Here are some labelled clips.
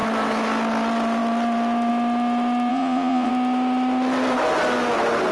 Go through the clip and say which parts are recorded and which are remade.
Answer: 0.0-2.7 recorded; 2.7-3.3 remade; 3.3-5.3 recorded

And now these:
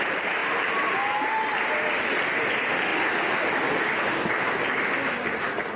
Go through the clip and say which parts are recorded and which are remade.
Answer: 0.0-5.8 recorded